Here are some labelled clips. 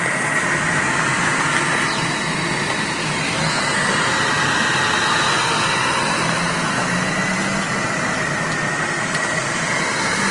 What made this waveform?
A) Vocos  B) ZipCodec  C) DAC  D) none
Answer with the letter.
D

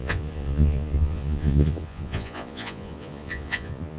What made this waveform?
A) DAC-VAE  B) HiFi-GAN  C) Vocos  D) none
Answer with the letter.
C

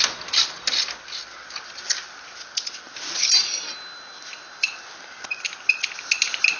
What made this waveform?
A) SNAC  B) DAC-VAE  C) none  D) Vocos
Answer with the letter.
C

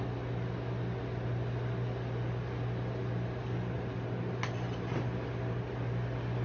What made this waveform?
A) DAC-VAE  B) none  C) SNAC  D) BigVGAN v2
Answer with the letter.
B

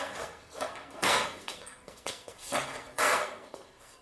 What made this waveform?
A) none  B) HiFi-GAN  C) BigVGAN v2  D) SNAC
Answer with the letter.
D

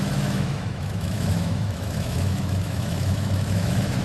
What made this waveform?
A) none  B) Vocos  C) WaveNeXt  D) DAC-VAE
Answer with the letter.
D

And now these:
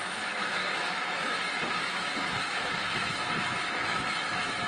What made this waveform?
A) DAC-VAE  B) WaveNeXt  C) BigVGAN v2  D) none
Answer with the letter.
A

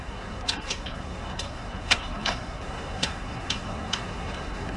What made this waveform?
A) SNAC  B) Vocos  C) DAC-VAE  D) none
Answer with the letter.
A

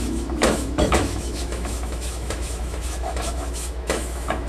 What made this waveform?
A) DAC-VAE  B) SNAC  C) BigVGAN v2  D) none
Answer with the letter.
A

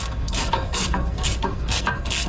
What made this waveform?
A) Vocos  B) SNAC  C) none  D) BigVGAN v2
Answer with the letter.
B